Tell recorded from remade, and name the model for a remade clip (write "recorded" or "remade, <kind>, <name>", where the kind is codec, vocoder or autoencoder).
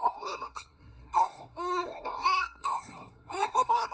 remade, codec, SNAC